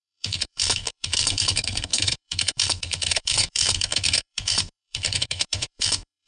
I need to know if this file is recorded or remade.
remade